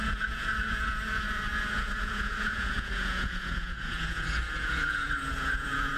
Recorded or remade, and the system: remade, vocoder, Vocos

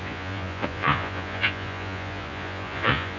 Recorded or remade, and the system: remade, vocoder, Vocos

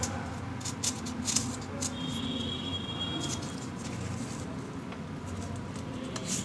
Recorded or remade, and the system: recorded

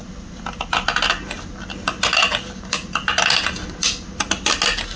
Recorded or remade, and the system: recorded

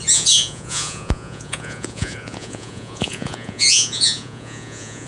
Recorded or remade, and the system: remade, vocoder, Vocos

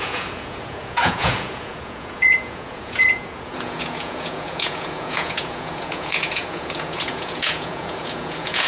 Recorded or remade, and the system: remade, vocoder, Vocos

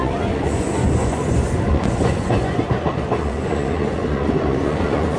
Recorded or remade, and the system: remade, vocoder, Vocos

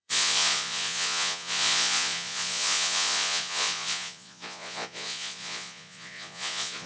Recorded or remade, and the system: remade, vocoder, Vocos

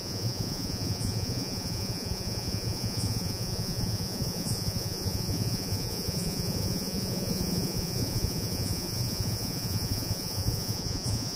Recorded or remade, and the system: remade, vocoder, Vocos